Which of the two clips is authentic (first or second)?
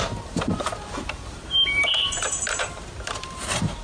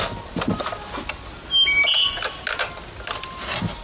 second